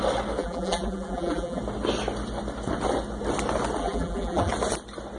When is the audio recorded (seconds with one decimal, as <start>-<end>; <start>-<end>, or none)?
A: 0.0-0.4; 1.6-3.8; 4.5-5.2